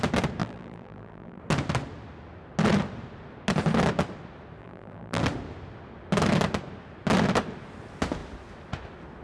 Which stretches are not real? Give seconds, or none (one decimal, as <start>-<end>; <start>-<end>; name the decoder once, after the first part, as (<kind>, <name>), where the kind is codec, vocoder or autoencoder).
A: 0.4-1.4 (vocoder, BigVGAN v2); 4.6-5.2